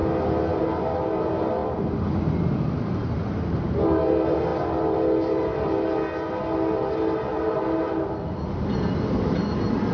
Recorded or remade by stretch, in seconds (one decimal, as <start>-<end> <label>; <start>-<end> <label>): 0.0-9.9 recorded